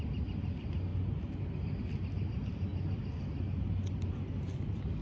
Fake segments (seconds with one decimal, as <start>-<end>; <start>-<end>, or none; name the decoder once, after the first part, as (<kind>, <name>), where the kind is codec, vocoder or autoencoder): none